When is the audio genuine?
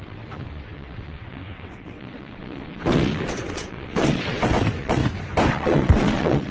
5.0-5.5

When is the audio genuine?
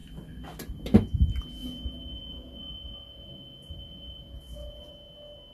0.0-1.6; 4.9-5.5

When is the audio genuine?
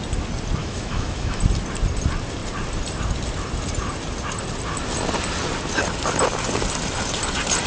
0.0-0.6; 1.4-7.7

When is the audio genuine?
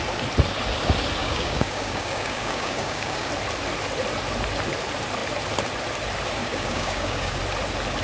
0.0-1.2; 3.3-6.4; 7.4-8.0